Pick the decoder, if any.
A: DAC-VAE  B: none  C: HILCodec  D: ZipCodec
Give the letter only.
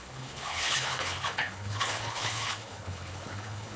C